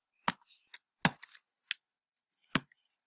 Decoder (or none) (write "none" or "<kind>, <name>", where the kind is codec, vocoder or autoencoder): none